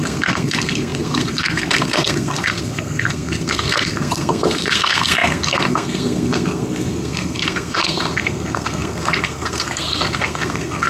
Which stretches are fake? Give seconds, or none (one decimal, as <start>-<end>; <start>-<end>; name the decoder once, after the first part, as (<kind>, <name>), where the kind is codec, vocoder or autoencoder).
0.0-10.9 (codec, SNAC)